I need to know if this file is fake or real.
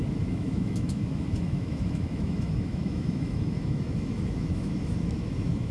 fake